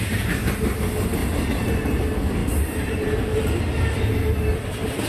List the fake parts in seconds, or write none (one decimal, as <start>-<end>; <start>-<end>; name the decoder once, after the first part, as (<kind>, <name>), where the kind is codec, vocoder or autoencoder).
1.2-2.0 (vocoder, BigVGAN v2); 2.4-3.6